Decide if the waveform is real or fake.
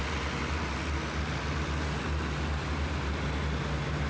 real